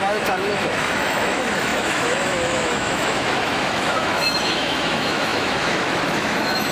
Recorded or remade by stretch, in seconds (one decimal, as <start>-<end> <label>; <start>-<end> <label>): 0.0-6.7 remade